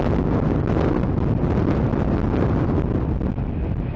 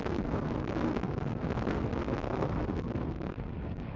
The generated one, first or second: second